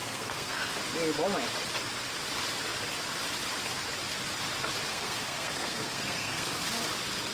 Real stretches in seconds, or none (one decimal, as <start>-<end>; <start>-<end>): 0.8-4.9; 6.6-7.3